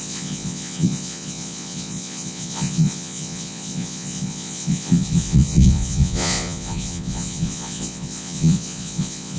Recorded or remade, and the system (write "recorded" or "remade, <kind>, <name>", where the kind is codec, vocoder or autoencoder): remade, vocoder, Vocos